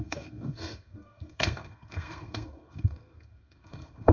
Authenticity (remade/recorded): remade